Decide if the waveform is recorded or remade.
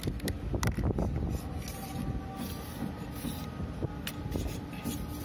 recorded